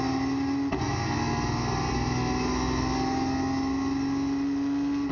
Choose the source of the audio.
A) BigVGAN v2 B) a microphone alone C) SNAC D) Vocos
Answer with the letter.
B